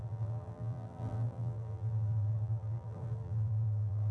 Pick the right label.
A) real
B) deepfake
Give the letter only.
B